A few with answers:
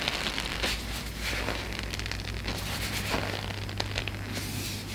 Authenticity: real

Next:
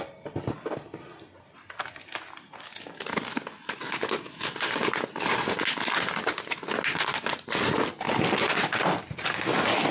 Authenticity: real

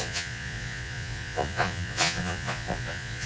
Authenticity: fake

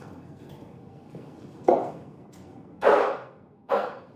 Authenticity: fake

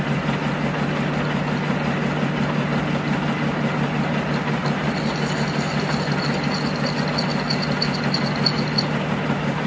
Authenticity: real